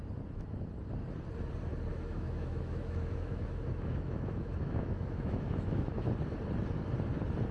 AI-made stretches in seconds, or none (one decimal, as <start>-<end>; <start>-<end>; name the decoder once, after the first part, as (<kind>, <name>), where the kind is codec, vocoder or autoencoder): 1.9-6.1 (autoencoder, DAC-VAE)